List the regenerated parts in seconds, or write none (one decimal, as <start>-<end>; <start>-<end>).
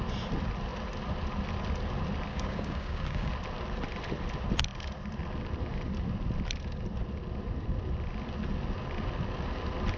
2.3-3.3